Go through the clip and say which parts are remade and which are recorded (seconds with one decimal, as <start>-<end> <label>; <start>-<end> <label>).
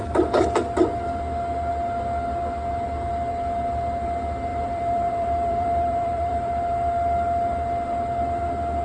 0.0-4.5 recorded; 4.5-6.5 remade; 6.5-8.8 recorded